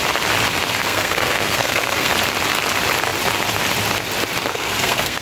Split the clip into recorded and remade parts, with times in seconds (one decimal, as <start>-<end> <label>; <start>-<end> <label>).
0.0-0.8 recorded; 0.8-2.1 remade; 2.1-4.5 recorded; 4.5-5.2 remade